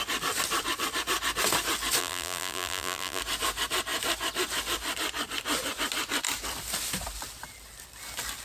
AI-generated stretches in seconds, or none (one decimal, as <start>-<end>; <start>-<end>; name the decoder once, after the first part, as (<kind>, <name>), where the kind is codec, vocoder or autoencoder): 2.0-3.2 (vocoder, BigVGAN v2)